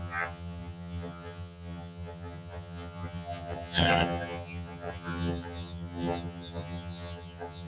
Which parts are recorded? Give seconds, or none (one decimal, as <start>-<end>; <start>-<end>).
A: none

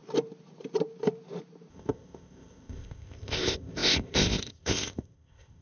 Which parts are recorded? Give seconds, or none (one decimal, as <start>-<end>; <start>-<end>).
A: 0.0-1.7

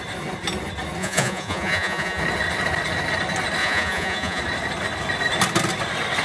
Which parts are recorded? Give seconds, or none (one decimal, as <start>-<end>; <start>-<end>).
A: 0.0-1.0; 2.2-3.6; 4.4-6.2

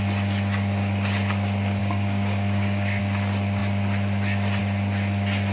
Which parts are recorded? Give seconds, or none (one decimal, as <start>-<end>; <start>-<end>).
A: 0.0-1.8; 3.0-5.5

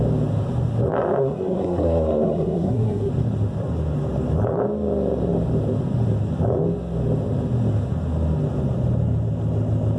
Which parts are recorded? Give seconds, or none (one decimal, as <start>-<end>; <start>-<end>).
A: 0.0-1.2; 3.1-10.0